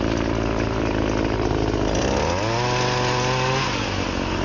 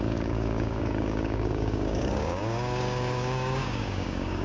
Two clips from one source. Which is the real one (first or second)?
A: first